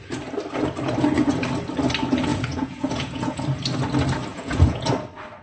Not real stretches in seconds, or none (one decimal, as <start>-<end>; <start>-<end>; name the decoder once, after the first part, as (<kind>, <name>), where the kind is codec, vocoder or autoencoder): 2.3-3.4 (vocoder, Vocos); 4.3-4.9